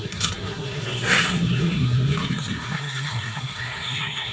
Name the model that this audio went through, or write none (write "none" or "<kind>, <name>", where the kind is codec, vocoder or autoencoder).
codec, SNAC